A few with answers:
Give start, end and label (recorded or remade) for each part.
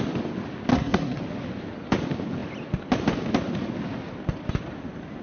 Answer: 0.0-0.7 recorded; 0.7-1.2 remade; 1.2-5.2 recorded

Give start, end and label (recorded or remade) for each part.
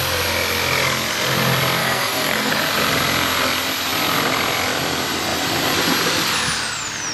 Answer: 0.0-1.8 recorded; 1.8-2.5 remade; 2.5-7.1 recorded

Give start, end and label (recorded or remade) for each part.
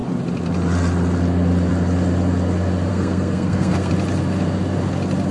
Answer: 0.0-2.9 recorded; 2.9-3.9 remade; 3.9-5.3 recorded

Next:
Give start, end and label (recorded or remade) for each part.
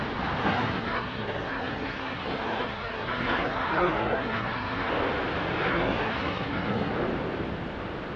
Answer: 0.0-0.4 recorded; 0.4-4.9 remade; 4.9-5.7 recorded; 5.7-6.9 remade; 6.9-8.2 recorded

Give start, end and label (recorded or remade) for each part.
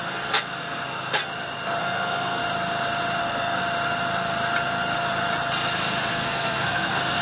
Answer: 0.0-1.2 remade; 1.2-1.8 recorded; 1.8-2.4 remade; 2.4-3.2 recorded; 3.2-3.6 remade; 3.6-6.1 recorded; 6.1-7.2 remade